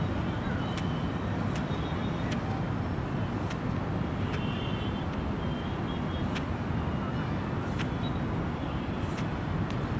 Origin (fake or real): real